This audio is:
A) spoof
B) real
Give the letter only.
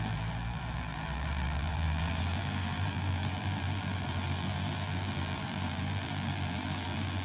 A